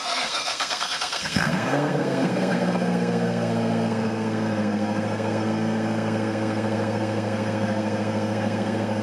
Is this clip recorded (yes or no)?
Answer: no